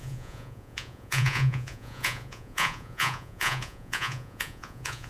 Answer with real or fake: fake